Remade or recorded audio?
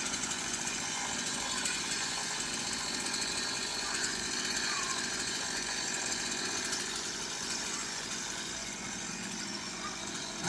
remade